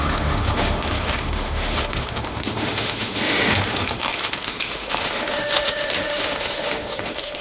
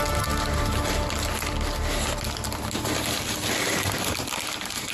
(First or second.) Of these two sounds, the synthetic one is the first